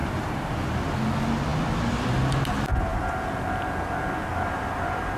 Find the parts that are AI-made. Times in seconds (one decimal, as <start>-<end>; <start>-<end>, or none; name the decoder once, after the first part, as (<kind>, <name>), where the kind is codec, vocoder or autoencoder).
0.0-0.5 (vocoder, BigVGAN v2)